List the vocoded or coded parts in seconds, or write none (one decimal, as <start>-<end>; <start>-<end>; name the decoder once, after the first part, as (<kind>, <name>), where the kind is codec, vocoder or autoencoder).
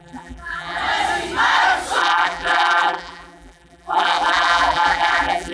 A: 0.0-0.8 (vocoder, BigVGAN v2); 2.0-5.5